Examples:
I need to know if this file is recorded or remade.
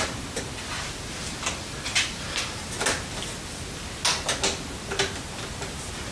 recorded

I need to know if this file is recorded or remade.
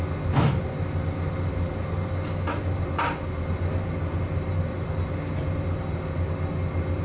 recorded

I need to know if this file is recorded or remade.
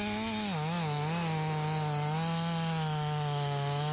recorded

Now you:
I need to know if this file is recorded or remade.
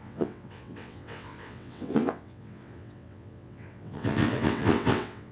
remade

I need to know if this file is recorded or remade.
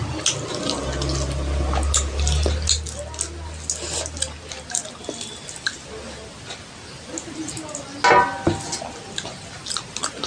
recorded